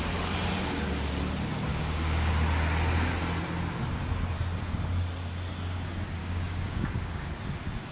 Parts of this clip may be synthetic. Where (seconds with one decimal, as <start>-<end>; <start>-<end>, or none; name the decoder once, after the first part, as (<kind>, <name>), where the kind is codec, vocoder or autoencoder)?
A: 1.7-2.3 (codec, DAC); 6.2-7.3